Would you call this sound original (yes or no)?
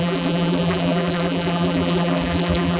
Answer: no